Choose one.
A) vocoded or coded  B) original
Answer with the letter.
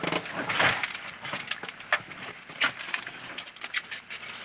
B